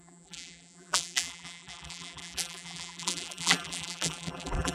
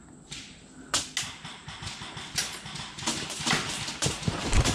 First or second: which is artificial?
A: first